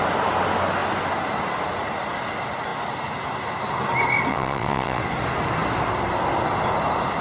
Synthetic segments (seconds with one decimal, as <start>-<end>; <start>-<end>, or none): 4.3-5.0